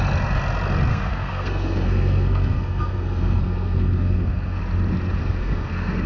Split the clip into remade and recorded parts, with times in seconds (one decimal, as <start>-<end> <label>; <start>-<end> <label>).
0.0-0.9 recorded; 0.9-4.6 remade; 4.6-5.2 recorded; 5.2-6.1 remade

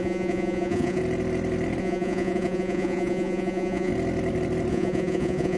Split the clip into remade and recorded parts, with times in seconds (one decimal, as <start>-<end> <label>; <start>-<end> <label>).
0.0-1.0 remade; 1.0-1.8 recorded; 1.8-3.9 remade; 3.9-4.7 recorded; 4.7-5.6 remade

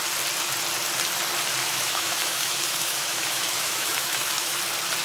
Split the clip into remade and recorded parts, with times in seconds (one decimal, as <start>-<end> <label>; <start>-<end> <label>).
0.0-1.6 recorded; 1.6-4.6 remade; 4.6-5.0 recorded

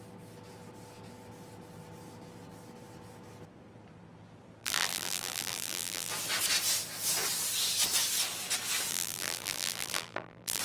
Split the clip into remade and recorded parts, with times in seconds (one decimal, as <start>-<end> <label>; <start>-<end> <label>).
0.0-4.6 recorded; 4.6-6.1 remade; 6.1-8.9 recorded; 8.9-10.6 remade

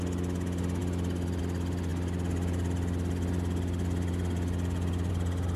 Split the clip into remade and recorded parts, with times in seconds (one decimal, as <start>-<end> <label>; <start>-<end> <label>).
0.0-5.6 recorded

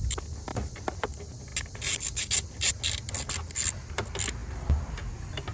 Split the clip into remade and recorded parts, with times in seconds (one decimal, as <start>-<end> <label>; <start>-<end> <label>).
0.0-5.5 recorded

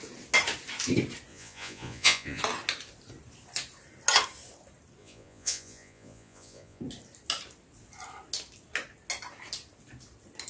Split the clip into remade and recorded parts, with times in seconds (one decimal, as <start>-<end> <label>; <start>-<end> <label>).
0.0-1.3 recorded; 1.3-2.4 remade; 2.4-5.0 recorded; 5.0-6.8 remade; 6.8-10.5 recorded